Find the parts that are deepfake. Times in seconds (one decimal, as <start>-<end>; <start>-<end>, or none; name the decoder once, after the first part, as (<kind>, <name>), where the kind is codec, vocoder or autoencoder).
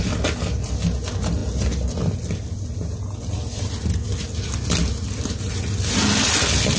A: none